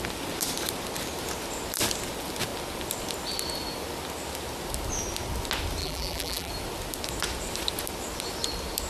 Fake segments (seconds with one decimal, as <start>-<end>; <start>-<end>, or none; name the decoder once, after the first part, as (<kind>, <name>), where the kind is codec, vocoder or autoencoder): 5.8-6.5 (vocoder, BigVGAN v2)